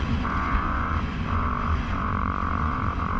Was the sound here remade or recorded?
remade